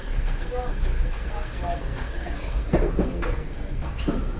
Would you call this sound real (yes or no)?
no